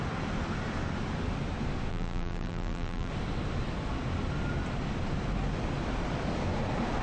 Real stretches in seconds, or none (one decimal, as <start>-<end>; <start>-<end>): 0.0-1.9; 3.1-7.0